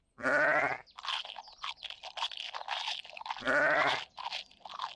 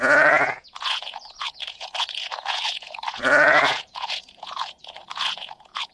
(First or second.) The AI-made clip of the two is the second